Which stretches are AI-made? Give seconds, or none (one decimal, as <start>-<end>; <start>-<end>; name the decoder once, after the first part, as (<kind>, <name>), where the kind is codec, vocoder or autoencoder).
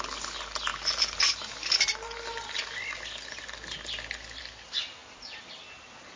none